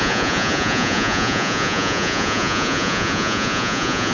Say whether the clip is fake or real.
fake